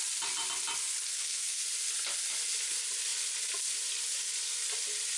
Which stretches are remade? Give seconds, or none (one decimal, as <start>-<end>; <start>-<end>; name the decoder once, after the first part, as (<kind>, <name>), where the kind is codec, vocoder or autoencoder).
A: 1.1-1.6 (codec, SNAC)